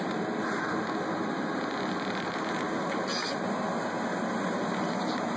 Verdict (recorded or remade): recorded